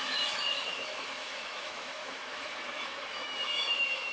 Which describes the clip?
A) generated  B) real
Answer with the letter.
A